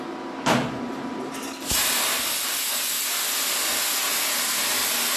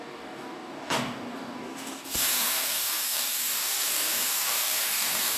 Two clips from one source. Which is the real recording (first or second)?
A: first